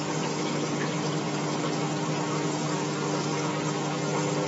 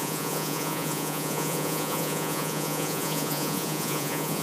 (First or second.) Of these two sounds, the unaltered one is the first